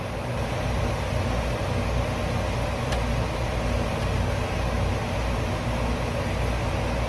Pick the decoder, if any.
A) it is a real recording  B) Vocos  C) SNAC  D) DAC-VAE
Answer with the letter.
A